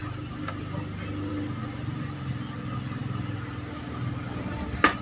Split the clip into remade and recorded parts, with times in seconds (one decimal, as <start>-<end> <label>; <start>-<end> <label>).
0.0-5.0 recorded